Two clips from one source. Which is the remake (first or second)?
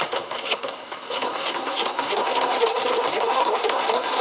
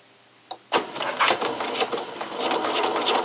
first